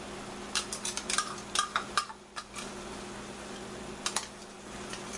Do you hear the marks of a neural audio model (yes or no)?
no